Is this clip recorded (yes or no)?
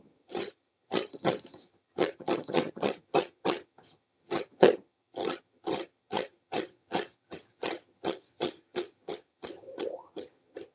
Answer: no